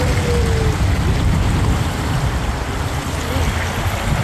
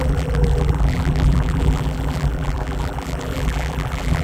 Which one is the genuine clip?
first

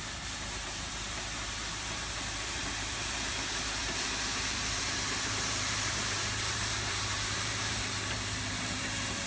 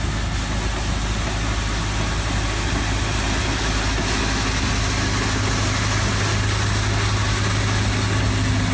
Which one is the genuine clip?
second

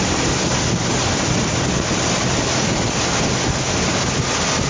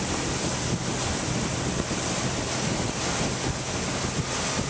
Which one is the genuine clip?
second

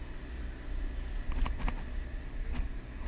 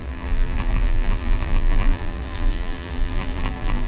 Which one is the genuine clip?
first